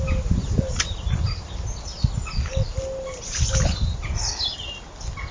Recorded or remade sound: recorded